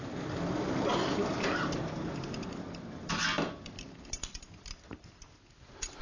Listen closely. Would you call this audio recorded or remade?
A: recorded